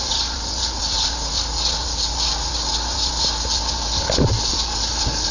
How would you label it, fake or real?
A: real